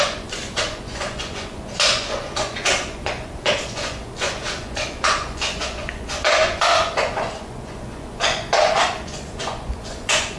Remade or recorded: remade